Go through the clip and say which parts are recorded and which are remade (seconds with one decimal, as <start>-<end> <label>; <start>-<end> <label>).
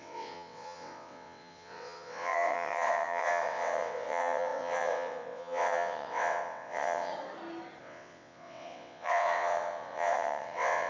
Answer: 0.0-7.1 remade; 7.1-7.8 recorded; 7.8-10.9 remade